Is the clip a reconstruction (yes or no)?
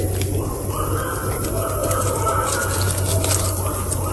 no